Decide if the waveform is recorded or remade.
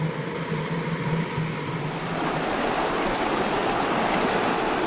recorded